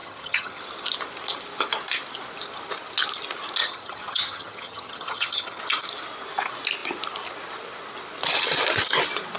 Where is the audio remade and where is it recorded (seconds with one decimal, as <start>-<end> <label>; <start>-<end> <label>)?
0.0-0.6 remade; 0.6-3.6 recorded; 3.6-5.6 remade; 5.6-9.4 recorded